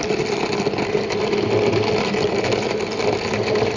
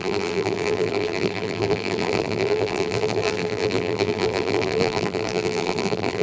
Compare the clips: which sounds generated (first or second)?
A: second